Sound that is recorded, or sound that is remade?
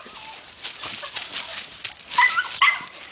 recorded